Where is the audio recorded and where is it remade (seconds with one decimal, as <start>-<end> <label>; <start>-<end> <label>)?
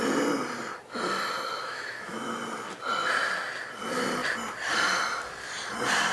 0.0-1.6 recorded; 1.6-2.4 remade; 2.4-6.1 recorded